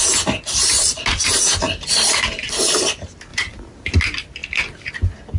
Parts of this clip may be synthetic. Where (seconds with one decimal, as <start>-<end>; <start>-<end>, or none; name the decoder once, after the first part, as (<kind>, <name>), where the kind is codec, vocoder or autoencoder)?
1.1-2.5 (vocoder, BigVGAN v2); 4.4-4.9